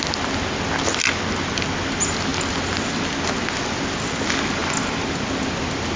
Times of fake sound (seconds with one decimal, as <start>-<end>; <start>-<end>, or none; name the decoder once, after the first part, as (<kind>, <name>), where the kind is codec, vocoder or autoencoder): none